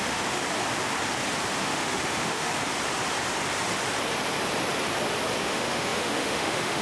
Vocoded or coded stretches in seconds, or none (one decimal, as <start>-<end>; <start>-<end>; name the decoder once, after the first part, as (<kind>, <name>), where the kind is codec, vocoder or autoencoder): 0.0-0.4 (autoencoder, DAC-VAE); 1.6-2.5; 5.4-6.8